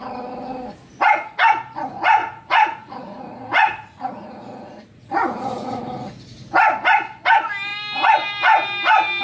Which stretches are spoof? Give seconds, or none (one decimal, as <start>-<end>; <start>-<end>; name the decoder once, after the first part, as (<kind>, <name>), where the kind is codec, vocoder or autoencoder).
2.2-5.8 (vocoder, Vocos)